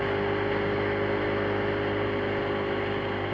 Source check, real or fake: real